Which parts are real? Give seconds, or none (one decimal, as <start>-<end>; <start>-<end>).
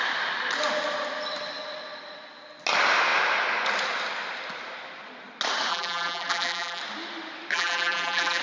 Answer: 0.0-5.7; 6.8-7.5